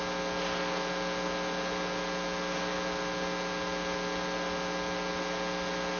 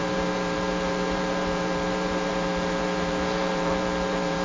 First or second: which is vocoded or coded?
second